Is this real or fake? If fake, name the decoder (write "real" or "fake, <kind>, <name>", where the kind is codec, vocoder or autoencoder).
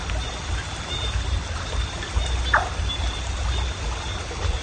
real